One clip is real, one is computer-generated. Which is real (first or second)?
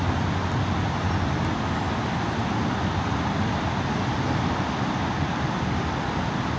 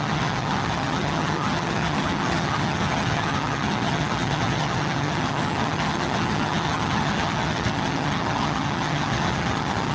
first